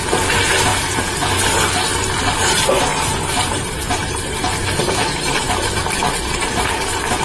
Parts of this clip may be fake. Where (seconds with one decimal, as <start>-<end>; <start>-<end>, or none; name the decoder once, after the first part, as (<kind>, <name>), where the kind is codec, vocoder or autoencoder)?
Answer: 2.9-5.4 (vocoder, BigVGAN v2)